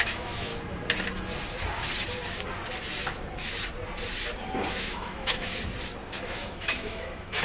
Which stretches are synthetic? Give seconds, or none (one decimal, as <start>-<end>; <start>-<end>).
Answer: 0.0-0.5; 4.7-5.5; 6.1-7.4